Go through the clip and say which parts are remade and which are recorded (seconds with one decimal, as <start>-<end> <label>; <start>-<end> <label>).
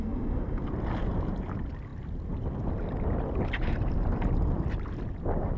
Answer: 0.0-0.6 remade; 0.6-5.6 recorded